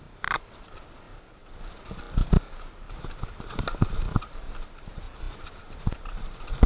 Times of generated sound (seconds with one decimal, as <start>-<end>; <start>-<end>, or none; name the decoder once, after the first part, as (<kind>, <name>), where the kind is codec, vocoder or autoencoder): none